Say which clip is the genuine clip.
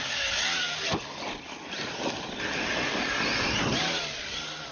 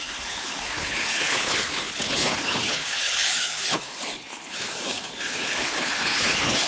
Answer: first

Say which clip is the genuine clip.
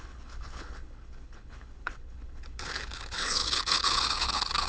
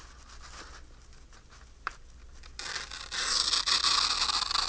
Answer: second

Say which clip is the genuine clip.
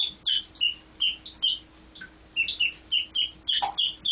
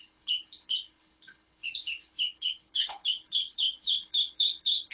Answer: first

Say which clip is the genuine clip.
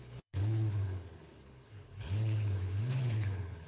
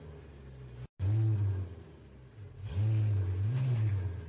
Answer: second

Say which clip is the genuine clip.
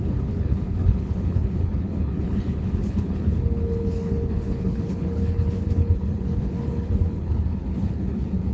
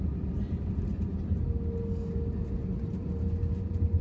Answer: second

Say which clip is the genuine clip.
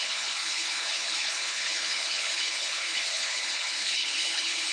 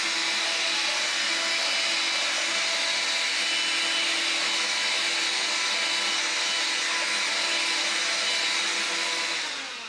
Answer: second